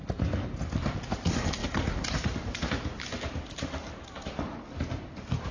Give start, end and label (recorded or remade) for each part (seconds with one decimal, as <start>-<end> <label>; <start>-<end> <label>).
0.0-5.5 recorded